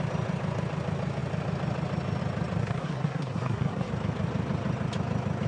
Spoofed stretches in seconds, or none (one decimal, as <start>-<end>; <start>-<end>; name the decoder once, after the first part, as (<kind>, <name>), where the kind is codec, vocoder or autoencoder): 2.6-3.9 (codec, SNAC)